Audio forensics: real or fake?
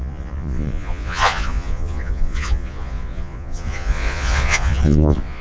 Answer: fake